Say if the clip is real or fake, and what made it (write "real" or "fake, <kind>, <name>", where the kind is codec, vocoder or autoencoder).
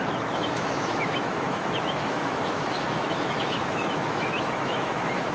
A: fake, autoencoder, DAC-VAE